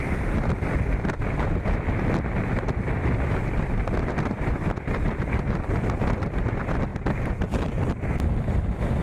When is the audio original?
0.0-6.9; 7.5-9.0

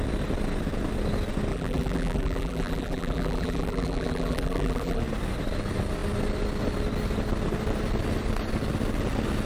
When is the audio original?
0.0-1.5; 5.0-9.5

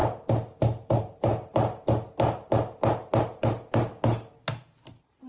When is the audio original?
0.0-0.9; 1.3-3.4; 3.9-4.6

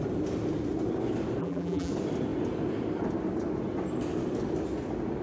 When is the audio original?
0.0-1.4; 1.9-5.2

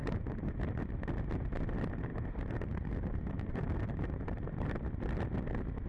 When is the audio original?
0.5-2.1; 4.8-5.9

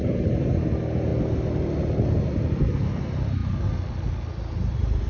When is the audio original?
1.1-2.5; 3.4-4.6